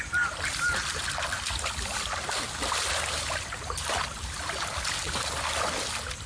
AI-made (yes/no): no